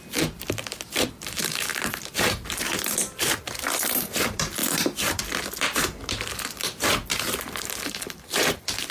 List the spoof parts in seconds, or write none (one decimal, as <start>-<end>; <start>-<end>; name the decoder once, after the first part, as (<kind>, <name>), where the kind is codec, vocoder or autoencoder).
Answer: 0.0-1.7 (vocoder, BigVGAN v2); 2.2-8.9